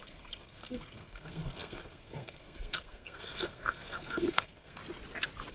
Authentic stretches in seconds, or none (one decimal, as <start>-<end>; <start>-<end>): 4.8-5.5